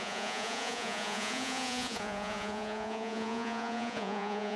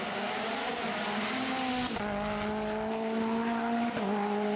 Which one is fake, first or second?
first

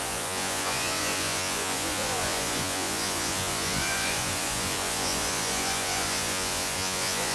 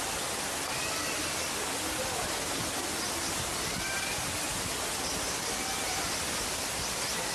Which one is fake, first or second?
first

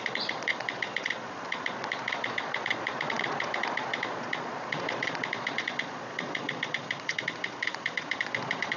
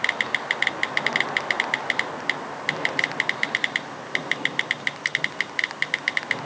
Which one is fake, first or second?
first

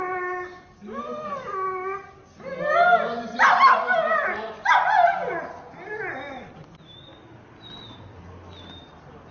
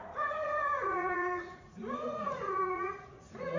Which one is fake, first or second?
second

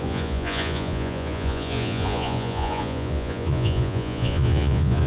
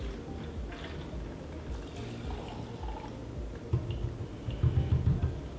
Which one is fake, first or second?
first